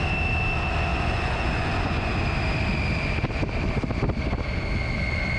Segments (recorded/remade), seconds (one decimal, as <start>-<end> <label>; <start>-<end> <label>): 0.0-0.9 recorded; 0.9-2.1 remade; 2.1-5.4 recorded